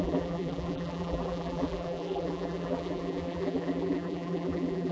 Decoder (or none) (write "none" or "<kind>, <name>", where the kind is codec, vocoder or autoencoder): vocoder, BigVGAN v2